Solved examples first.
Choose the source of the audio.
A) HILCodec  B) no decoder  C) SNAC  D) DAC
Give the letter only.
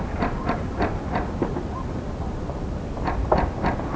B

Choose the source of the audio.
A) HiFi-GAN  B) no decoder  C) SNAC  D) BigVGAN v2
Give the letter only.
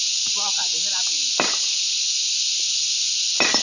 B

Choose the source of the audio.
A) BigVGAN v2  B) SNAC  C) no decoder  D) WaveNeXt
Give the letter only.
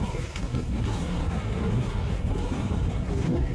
B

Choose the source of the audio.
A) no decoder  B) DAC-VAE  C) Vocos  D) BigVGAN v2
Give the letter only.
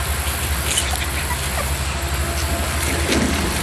A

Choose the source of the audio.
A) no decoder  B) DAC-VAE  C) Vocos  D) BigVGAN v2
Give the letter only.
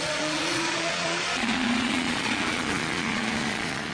C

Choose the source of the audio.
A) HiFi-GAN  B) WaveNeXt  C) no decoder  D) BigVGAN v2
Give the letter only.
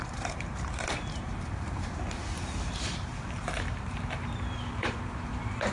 D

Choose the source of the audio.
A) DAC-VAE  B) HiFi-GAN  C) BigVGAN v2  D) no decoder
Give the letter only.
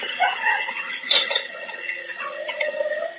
B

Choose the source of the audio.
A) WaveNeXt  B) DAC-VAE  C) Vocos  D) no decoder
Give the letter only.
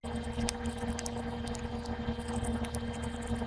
D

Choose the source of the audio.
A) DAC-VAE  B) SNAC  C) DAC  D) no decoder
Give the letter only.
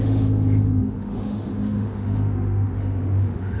A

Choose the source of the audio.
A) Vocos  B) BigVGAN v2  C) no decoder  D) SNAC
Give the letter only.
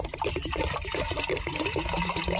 C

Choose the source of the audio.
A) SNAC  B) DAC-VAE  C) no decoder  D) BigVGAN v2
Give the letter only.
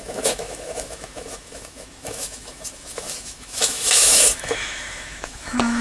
B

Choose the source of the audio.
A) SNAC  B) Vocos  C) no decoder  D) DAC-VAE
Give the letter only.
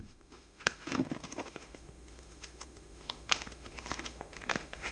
D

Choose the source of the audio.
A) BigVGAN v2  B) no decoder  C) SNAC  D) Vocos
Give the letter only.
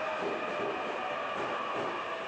B